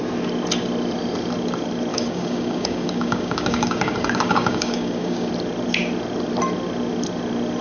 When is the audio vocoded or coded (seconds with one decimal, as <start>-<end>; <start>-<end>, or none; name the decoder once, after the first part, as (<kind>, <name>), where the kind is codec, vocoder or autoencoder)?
1.9-5.3 (codec, DAC)